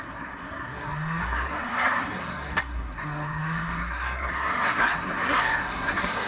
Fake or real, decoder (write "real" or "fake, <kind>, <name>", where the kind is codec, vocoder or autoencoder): fake, codec, SNAC